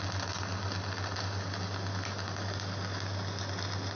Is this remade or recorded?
recorded